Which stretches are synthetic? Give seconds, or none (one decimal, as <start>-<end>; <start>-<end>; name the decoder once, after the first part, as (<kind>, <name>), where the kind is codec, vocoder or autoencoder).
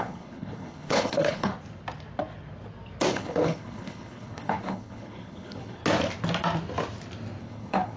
0.0-1.5 (codec, HILCodec); 3.1-5.8; 7.4-8.0